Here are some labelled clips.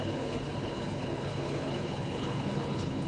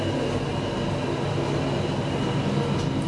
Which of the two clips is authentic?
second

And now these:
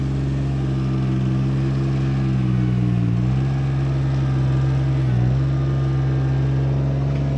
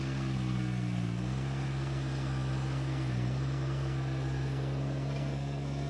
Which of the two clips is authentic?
first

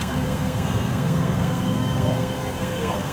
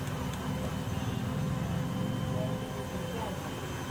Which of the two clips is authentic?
second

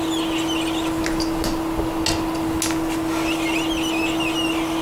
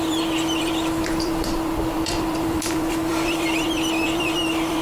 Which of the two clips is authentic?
first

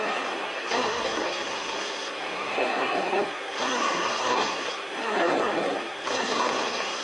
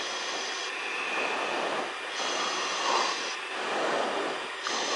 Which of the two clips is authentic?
second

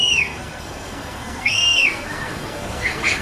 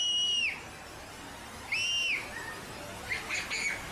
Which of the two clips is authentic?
second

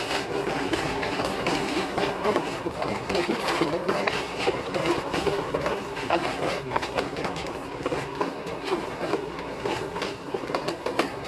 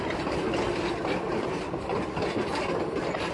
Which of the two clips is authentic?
second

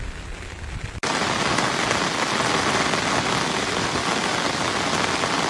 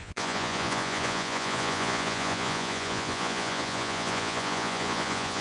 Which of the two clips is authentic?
first